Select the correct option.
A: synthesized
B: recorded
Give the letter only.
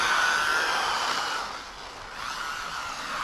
B